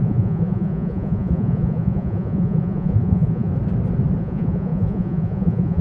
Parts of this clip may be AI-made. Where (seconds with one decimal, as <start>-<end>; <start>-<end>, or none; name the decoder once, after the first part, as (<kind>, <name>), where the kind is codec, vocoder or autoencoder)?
0.0-3.5 (vocoder, Vocos); 4.2-5.8